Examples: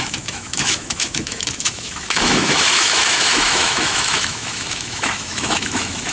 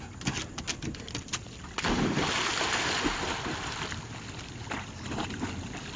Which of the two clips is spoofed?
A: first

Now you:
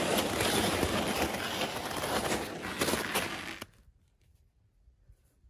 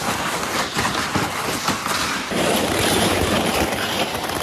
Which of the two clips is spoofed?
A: second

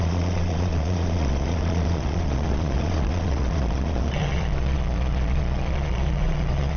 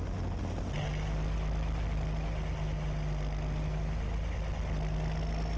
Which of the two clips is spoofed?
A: first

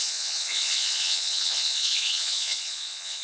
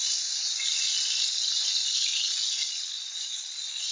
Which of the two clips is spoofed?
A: first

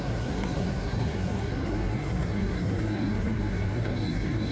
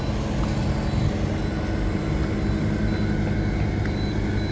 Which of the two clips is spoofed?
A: first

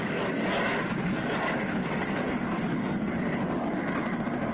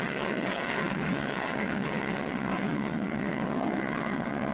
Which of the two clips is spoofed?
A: second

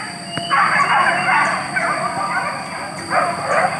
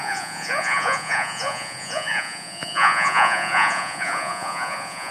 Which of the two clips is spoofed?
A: second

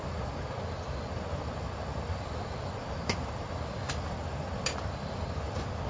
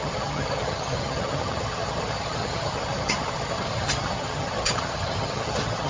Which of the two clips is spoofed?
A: second